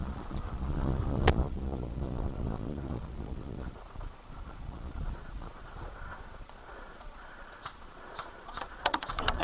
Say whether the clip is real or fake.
fake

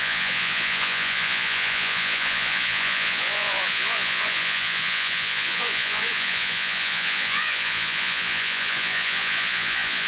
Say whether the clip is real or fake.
fake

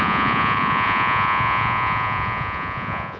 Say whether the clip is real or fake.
fake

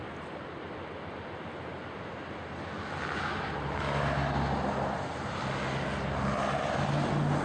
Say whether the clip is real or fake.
real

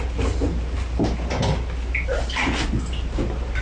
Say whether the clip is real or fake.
real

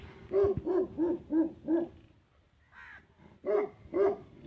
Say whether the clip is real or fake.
real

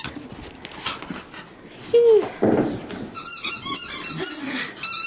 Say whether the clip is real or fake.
real